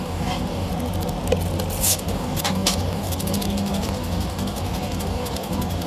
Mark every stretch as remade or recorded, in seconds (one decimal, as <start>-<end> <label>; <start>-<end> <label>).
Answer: 0.0-0.7 remade; 0.7-1.8 recorded; 1.8-5.9 remade

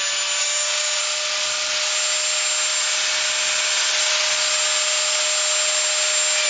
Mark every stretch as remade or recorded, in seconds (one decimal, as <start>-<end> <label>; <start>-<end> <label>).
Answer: 0.0-0.4 recorded; 0.4-1.0 remade; 1.0-6.5 recorded

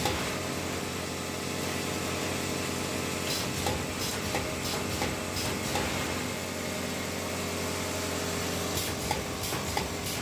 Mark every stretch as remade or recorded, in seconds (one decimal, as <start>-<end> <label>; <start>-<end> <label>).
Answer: 0.0-10.2 recorded

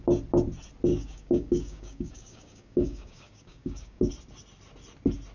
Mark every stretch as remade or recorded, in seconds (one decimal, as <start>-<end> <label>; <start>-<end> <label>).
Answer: 0.0-0.9 recorded; 0.9-4.1 remade; 4.1-5.3 recorded

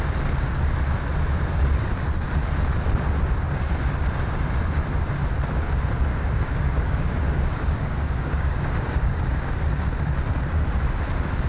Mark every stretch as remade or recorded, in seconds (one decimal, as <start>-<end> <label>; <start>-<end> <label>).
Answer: 0.0-6.1 recorded; 6.1-9.5 remade; 9.5-11.5 recorded